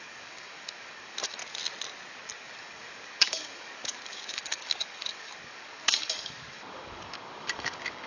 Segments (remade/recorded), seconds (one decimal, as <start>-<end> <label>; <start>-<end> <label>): 0.0-1.4 remade; 1.4-2.2 recorded; 2.2-8.1 remade